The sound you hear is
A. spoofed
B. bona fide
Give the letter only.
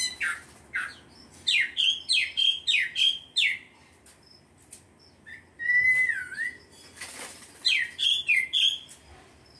B